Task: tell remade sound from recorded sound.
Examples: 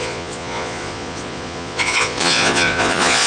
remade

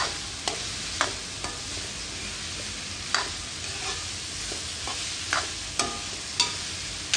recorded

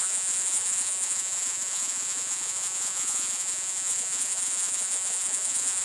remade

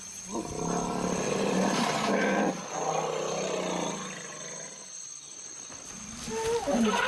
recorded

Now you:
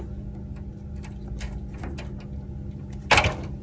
recorded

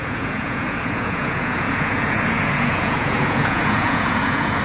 remade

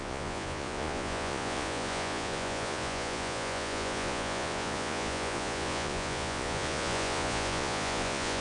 remade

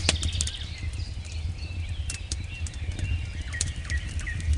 recorded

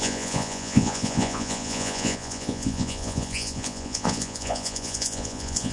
remade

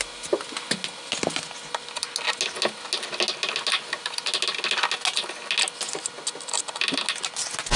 recorded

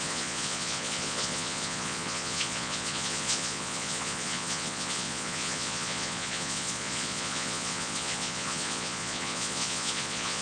remade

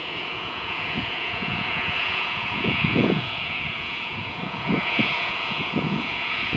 remade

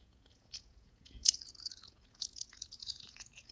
remade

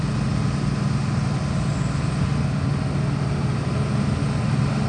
recorded